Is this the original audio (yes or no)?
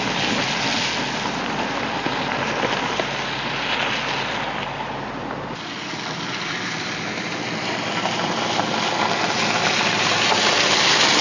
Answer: yes